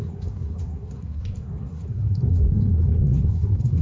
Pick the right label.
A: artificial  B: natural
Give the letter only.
A